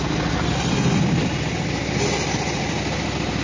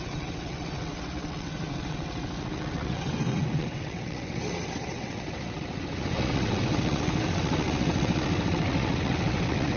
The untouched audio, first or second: first